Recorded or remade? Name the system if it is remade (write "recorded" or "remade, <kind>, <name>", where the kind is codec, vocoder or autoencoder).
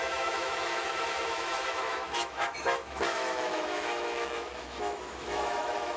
remade, autoencoder, DAC-VAE